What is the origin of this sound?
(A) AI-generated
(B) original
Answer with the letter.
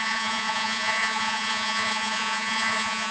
A